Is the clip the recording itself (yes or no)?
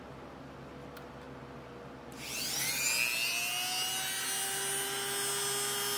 yes